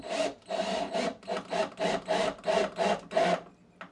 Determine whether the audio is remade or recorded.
recorded